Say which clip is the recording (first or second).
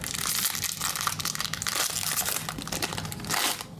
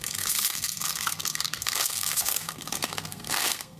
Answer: first